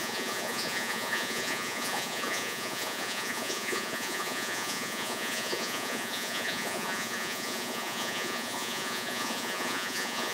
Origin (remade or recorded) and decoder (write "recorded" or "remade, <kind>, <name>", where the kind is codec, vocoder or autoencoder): remade, vocoder, Vocos